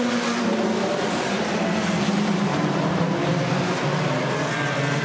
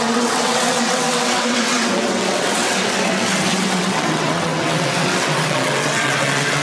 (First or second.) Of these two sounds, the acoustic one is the first